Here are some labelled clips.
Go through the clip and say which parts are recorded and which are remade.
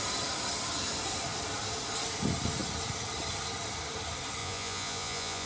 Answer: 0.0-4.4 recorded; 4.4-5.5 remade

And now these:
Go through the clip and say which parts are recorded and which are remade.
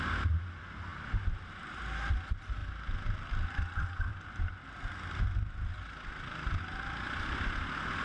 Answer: 0.0-8.0 recorded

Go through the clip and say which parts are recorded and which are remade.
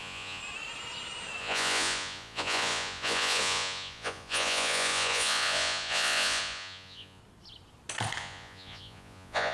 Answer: 0.0-0.4 remade; 0.4-1.4 recorded; 1.4-7.2 remade; 7.2-8.2 recorded; 8.2-9.5 remade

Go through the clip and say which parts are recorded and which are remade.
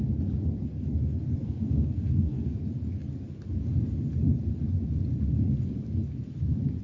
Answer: 0.0-1.4 recorded; 1.4-2.6 remade; 2.6-6.8 recorded